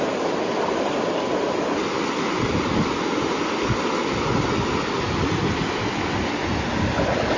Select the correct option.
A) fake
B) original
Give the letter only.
B